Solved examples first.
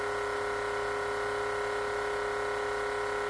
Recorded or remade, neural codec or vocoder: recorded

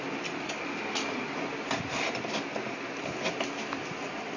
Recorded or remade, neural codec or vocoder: recorded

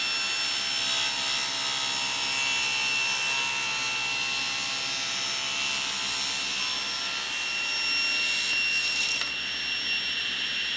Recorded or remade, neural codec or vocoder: recorded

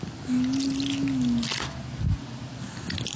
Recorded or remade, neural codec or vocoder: recorded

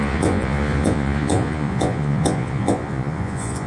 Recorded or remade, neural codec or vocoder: remade, vocoder, Vocos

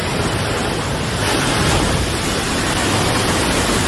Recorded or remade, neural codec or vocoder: remade, vocoder, BigVGAN v2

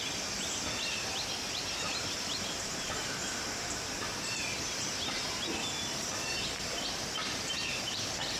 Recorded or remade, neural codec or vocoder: remade, vocoder, BigVGAN v2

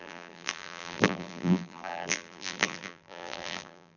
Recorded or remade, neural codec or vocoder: remade, vocoder, BigVGAN v2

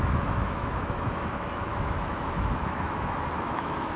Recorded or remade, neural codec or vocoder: remade, autoencoder, DAC-VAE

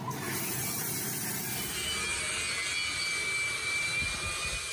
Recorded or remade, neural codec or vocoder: recorded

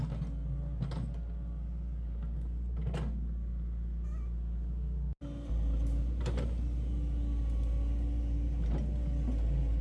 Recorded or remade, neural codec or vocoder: recorded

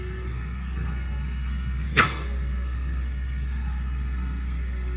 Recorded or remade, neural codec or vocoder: remade, codec, SNAC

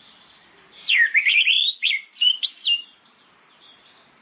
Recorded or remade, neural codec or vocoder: remade, vocoder, BigVGAN v2